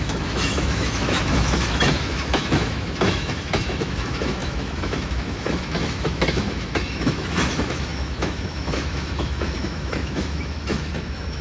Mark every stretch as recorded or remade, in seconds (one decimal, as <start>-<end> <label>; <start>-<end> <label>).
0.0-11.4 remade